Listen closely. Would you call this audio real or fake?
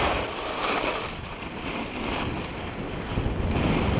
real